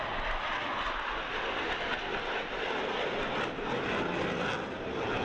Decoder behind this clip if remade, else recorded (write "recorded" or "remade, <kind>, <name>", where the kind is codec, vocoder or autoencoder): recorded